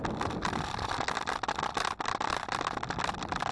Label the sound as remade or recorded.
recorded